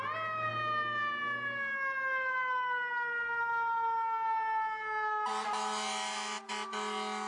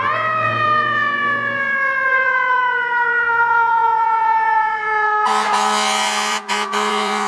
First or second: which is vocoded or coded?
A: second